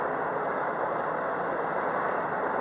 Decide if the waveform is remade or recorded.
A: recorded